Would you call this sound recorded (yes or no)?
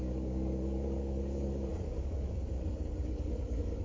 no